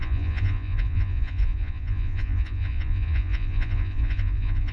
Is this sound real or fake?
fake